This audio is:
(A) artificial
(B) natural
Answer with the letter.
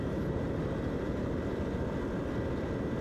B